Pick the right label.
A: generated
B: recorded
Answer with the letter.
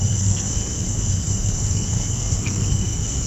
A